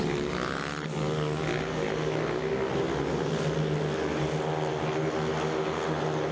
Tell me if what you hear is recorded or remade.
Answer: recorded